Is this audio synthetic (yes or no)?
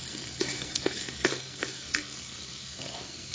yes